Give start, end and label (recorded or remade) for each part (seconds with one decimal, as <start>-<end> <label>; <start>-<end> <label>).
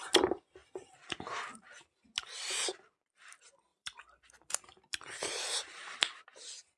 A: 0.0-3.7 recorded; 3.7-6.8 remade